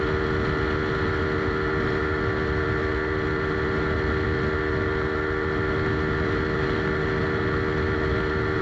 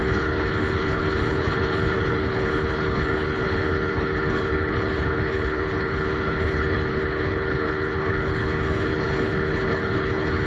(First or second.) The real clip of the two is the first